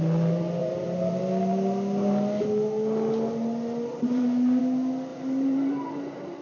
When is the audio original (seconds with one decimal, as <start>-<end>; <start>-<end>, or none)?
0.0-0.6; 1.2-3.9; 4.6-5.1